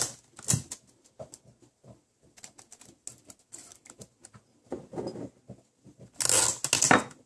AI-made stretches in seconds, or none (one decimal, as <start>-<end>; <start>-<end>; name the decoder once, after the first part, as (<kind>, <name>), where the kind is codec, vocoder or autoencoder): none

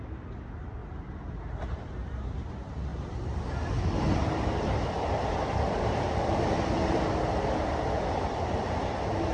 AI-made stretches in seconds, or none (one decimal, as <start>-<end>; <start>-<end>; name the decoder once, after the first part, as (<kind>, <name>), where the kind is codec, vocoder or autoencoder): 0.0-0.8 (vocoder, BigVGAN v2); 1.6-9.3

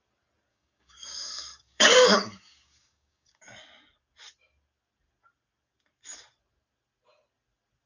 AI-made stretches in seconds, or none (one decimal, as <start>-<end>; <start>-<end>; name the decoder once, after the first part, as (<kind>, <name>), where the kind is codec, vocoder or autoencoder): 0.5-3.6 (codec, DAC)

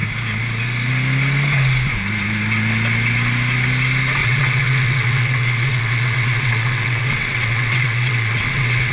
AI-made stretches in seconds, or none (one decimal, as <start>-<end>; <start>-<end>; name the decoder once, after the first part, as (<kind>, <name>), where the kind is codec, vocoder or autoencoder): 4.2-8.9 (vocoder, WaveNeXt)

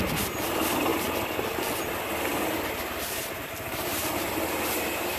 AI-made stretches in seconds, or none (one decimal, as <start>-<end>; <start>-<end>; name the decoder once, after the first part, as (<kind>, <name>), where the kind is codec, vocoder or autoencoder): 2.3-4.3 (vocoder, BigVGAN v2)

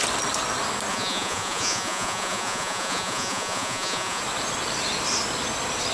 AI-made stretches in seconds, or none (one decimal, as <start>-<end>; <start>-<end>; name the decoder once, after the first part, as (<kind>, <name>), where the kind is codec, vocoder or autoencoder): 0.9-4.2 (vocoder, Vocos)

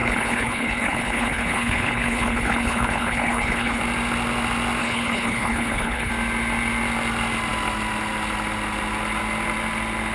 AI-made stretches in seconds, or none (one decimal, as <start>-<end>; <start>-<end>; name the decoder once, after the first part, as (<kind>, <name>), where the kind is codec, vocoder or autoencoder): 0.0-3.8 (codec, HILCodec); 4.8-6.1

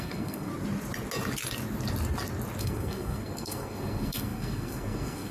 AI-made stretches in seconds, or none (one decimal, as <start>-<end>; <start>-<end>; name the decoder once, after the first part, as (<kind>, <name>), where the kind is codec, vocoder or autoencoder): 0.0-0.5 (codec, SNAC); 2.6-5.3